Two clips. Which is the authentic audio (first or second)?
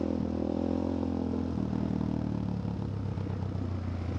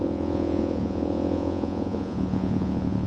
first